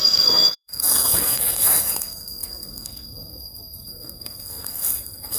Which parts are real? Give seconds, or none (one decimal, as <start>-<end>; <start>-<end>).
none